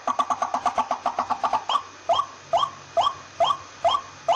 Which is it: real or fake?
real